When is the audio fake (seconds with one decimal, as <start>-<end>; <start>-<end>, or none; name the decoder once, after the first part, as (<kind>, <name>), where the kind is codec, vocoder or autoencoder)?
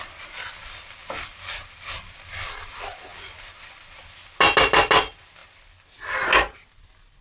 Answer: none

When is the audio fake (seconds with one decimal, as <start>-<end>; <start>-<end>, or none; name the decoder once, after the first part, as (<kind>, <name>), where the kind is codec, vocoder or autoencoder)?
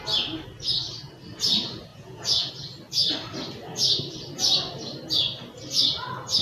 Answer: 1.9-2.5 (vocoder, Vocos)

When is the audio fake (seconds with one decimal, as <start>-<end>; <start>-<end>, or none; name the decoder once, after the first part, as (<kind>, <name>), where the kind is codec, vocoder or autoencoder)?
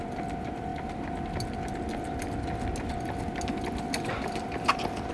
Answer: 0.0-0.7 (vocoder, BigVGAN v2); 3.8-5.1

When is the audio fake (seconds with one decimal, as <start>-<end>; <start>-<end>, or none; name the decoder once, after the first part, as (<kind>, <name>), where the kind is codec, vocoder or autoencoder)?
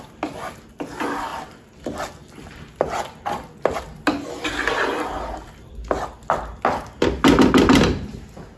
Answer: none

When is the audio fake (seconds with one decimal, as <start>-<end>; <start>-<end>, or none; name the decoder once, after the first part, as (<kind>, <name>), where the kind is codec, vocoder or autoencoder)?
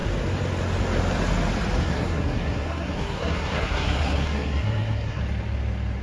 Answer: 1.8-5.2 (codec, SNAC)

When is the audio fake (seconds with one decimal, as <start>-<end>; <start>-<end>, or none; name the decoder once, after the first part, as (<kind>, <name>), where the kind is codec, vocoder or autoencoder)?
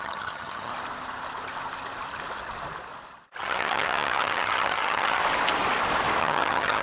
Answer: 0.0-0.7 (vocoder, HiFi-GAN); 3.4-5.2; 6.2-6.8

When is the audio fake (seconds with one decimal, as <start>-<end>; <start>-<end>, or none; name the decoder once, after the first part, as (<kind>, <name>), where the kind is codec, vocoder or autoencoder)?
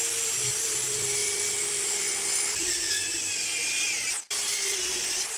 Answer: none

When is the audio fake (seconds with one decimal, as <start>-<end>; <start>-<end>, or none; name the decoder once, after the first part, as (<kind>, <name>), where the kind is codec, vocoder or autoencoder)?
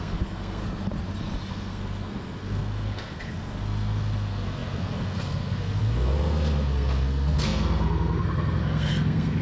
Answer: 0.0-0.6 (codec, SNAC); 1.5-9.4